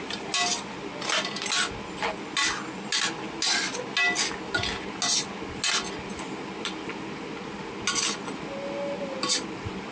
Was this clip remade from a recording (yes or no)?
no